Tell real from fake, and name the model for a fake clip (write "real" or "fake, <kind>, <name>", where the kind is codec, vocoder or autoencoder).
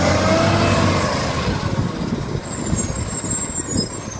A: real